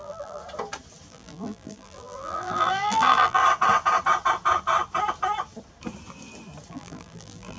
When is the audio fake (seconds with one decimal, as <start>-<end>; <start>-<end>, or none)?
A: 0.0-0.4; 1.1-3.4; 6.7-7.6